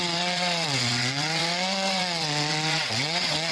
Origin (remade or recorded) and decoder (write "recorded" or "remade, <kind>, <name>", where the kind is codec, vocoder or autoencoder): remade, vocoder, WaveNeXt